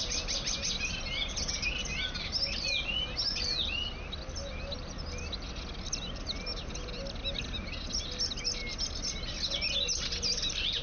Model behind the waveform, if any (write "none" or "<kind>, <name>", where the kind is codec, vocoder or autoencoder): none